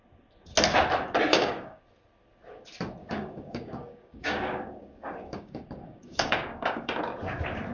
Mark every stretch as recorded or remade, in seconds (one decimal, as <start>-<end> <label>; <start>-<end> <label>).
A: 0.0-1.3 recorded; 1.3-1.8 remade; 1.8-3.0 recorded; 3.0-7.0 remade; 7.0-7.7 recorded